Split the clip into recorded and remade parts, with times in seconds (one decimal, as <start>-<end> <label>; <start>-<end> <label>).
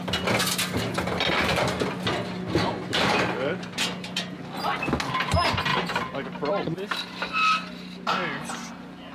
0.0-9.1 recorded